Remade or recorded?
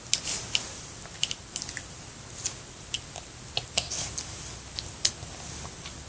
recorded